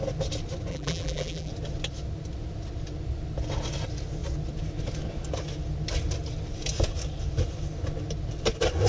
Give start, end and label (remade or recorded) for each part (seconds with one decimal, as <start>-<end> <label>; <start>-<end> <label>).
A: 0.0-0.7 recorded; 0.7-1.5 remade; 1.5-8.9 recorded